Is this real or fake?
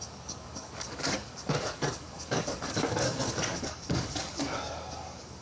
fake